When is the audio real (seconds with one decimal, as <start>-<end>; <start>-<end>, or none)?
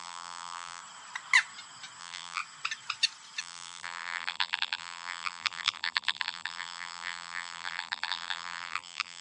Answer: 0.8-2.0; 2.4-3.4